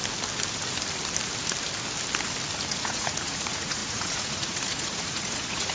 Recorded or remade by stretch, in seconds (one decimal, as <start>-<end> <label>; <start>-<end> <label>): 0.0-2.7 recorded; 2.7-5.7 remade